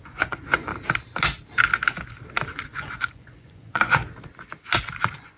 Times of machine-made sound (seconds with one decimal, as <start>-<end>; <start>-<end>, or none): 0.0-0.7; 2.5-4.0; 5.0-5.4